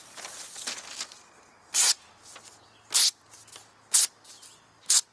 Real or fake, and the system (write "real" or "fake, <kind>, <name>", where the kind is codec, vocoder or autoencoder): real